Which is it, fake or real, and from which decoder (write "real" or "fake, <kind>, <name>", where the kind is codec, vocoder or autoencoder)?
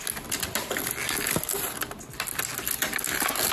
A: real